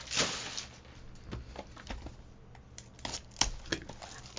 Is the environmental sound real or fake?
real